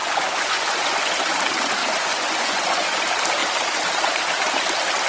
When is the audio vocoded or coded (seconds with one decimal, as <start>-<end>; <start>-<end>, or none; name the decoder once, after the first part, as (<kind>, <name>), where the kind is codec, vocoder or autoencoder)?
0.0-1.1 (vocoder, Vocos); 1.8-3.0